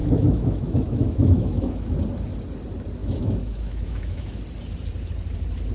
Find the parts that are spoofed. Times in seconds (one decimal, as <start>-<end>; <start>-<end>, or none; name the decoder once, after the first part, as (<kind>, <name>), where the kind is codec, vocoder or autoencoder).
0.0-2.0 (autoencoder, DAC-VAE); 3.0-4.4